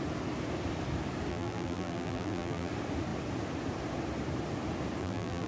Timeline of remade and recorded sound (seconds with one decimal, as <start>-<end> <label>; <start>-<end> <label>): 0.0-1.3 recorded; 1.3-2.7 remade; 2.7-5.0 recorded; 5.0-5.5 remade